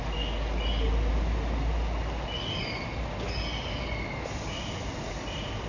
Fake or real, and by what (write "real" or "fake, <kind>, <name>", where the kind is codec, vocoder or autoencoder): real